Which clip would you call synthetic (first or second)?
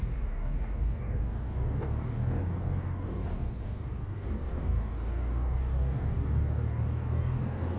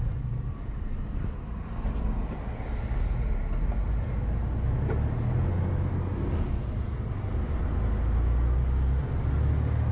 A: first